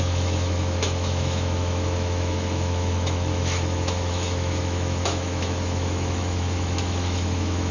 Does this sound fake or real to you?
fake